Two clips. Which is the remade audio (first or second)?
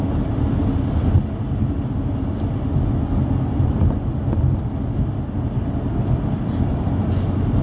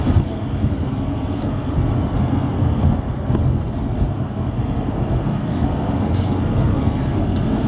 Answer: second